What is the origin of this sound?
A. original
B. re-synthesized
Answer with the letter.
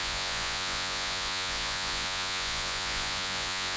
B